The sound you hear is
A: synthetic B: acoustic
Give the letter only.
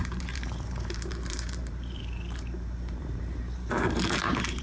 A